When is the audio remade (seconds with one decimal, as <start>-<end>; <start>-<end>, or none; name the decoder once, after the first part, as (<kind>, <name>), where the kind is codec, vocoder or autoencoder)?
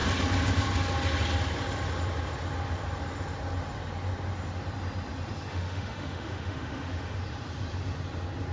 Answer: 5.5-7.2 (autoencoder, DAC-VAE)